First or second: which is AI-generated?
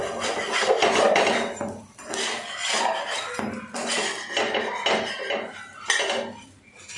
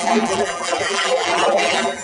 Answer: second